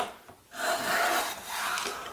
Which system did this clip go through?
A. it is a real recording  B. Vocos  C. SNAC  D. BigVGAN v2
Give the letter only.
A